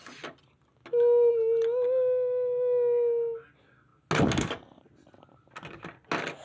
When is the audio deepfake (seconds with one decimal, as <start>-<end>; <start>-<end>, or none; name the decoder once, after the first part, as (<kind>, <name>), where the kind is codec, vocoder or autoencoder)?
none